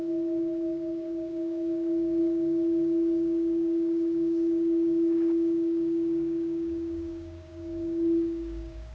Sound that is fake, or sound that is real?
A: fake